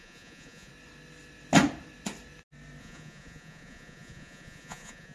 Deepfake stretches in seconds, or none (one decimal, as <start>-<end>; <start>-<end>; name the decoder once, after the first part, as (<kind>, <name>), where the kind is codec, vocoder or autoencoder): 0.0-0.7 (vocoder, Vocos); 2.8-5.1